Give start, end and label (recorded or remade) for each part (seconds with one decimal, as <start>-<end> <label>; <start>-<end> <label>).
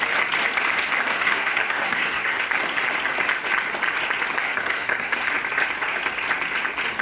0.0-1.1 recorded; 1.1-2.4 remade; 2.4-4.4 recorded; 4.4-5.3 remade; 5.3-7.0 recorded